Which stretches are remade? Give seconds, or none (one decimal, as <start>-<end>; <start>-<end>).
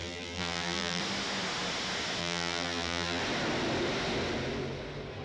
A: 0.0-1.0; 2.2-3.2